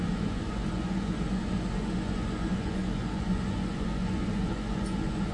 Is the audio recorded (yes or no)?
no